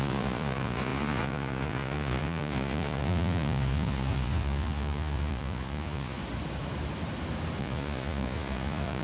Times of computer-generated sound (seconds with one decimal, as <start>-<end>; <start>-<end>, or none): 0.0-6.2; 7.6-9.0